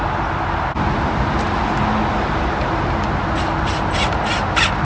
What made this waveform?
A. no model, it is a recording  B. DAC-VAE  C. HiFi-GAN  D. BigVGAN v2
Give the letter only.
A